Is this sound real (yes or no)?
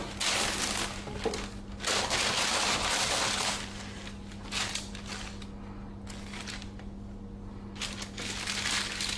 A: yes